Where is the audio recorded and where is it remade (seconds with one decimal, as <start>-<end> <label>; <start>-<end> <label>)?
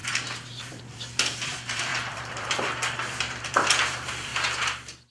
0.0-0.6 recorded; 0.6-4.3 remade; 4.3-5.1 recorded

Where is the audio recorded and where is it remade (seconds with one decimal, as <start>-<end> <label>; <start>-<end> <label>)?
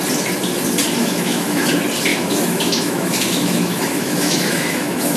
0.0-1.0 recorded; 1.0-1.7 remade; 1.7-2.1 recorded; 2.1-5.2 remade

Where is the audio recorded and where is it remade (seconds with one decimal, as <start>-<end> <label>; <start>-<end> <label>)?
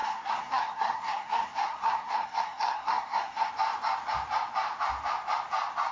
0.0-3.5 remade; 3.5-5.9 recorded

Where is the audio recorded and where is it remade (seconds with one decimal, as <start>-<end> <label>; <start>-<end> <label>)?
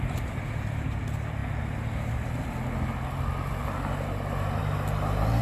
0.0-5.4 recorded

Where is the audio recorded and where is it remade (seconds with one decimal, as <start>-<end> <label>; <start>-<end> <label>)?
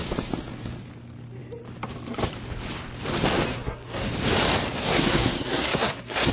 0.0-3.5 recorded; 3.5-4.1 remade; 4.1-4.8 recorded; 4.8-6.3 remade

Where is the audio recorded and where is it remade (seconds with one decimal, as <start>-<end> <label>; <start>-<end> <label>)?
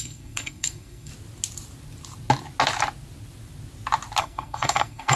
0.0-1.1 remade; 1.1-4.2 recorded; 4.2-5.2 remade